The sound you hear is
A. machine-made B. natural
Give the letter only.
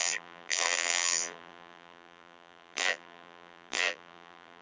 A